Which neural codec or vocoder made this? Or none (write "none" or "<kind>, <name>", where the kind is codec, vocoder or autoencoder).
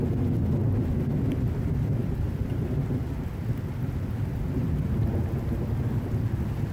none